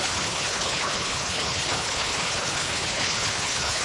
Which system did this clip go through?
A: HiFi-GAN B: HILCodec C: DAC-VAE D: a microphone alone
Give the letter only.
B